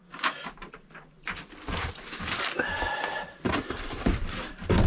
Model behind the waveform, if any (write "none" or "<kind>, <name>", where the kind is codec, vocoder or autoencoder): none